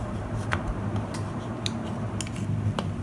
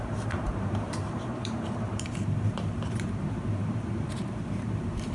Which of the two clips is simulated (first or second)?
second